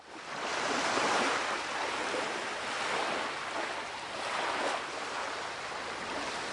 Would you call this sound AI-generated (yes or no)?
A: no